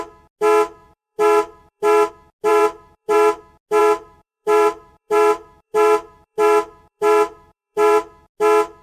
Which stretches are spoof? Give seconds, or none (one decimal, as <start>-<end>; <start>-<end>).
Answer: 0.8-2.1; 2.5-3.4; 3.8-8.0